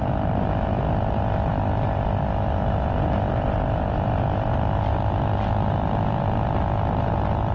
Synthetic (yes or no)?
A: no